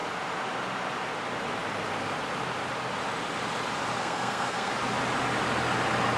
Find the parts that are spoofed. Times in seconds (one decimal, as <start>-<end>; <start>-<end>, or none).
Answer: 4.0-4.7